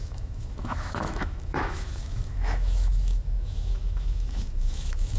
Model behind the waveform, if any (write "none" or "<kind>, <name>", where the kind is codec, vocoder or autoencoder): autoencoder, DAC-VAE